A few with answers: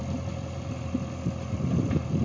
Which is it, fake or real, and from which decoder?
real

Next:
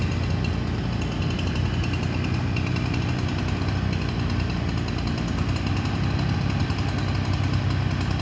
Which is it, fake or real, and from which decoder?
real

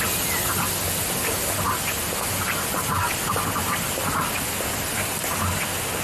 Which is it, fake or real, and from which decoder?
real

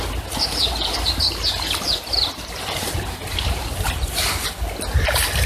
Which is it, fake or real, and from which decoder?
real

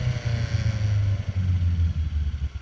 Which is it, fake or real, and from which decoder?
real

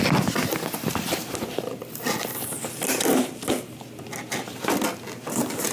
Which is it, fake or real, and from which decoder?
real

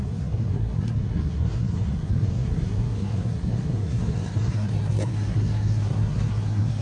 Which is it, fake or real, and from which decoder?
fake, codec, SNAC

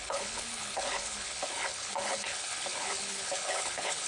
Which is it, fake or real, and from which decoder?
fake, codec, HILCodec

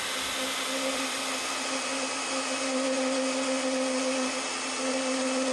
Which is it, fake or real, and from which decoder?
real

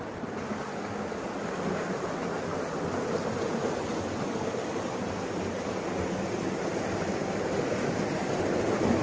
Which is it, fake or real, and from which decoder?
real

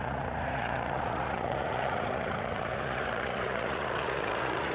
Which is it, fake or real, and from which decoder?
fake, vocoder, Vocos